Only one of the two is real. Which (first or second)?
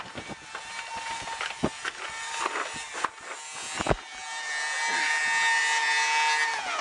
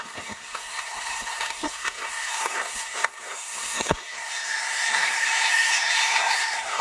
first